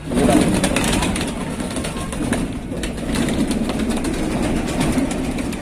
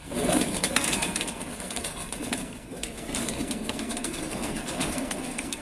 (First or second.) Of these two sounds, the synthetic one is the second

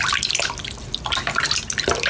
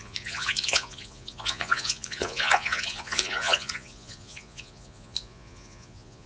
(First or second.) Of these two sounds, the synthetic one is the second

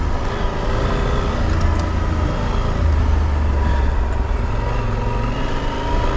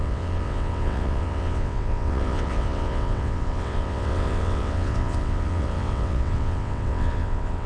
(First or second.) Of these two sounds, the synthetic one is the second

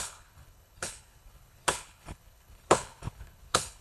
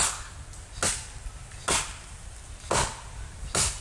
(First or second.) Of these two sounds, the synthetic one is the first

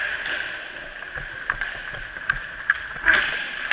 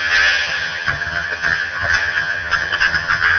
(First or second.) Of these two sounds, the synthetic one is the second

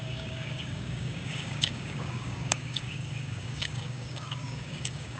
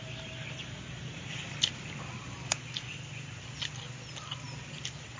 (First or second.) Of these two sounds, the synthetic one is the first